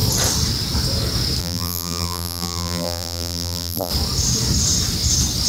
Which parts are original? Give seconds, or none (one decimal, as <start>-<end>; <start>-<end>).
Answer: 0.0-1.4; 3.9-5.5